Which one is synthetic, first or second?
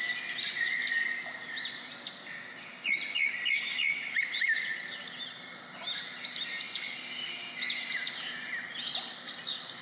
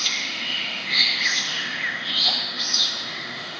second